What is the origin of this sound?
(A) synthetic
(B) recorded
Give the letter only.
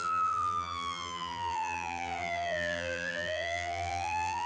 A